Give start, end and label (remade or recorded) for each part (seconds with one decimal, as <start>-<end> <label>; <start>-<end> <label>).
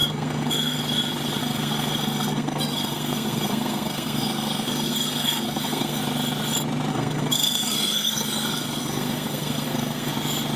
0.0-0.8 remade; 0.8-1.4 recorded; 1.4-6.0 remade; 6.0-6.9 recorded; 6.9-10.1 remade; 10.1-10.6 recorded